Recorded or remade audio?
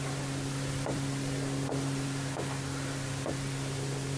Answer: remade